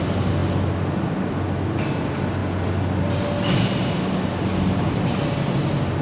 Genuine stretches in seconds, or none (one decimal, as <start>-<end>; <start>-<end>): 0.0-6.0